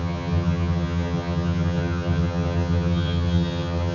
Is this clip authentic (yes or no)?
no